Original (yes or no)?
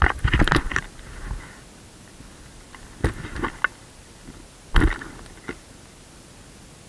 yes